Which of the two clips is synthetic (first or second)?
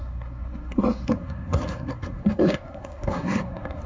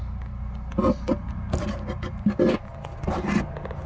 first